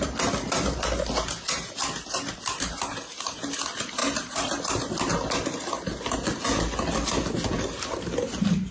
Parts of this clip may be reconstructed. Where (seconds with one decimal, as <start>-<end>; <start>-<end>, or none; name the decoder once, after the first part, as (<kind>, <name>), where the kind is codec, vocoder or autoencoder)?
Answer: none